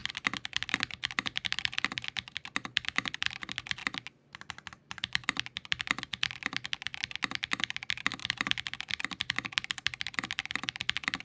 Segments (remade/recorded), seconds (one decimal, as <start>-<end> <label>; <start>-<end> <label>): 0.0-11.2 recorded